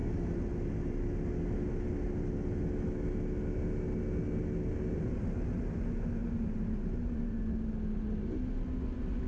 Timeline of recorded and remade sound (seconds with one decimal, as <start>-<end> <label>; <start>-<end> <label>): 0.0-6.2 recorded; 6.2-7.4 remade; 7.4-9.3 recorded